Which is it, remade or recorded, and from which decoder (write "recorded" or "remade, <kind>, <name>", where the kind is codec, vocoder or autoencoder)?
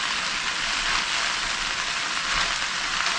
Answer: recorded